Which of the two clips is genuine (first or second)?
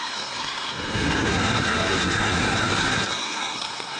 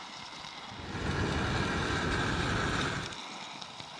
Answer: second